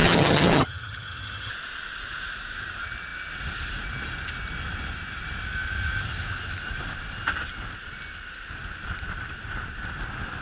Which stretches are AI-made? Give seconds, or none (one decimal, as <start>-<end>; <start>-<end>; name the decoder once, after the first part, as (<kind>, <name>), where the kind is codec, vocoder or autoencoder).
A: 0.0-1.5 (vocoder, HiFi-GAN)

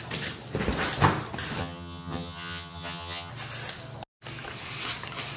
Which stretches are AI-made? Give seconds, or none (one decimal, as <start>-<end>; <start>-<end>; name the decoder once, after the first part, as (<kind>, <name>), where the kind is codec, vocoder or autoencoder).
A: 1.6-3.3 (vocoder, HiFi-GAN)

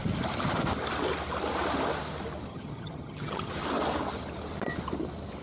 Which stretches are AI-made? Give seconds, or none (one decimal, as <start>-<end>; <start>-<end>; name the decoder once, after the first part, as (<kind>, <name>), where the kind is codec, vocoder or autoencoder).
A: 2.5-3.5 (vocoder, HiFi-GAN)

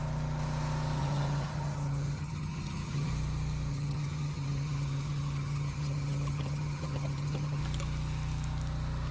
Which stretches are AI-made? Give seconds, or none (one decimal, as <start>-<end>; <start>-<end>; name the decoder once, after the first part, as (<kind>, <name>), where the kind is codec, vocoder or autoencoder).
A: 1.0-3.1 (vocoder, HiFi-GAN); 3.7-7.6

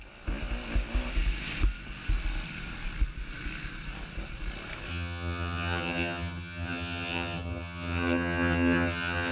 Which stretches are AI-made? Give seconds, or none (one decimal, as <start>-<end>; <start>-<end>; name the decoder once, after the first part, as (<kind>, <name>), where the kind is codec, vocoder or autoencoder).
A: 4.9-9.3 (vocoder, HiFi-GAN)

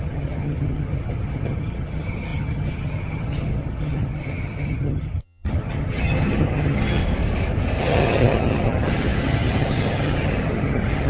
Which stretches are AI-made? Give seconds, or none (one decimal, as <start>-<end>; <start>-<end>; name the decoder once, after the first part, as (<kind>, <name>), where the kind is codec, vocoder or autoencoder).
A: 0.0-7.0 (vocoder, HiFi-GAN); 7.8-11.1